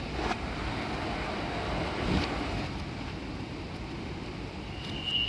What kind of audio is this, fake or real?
real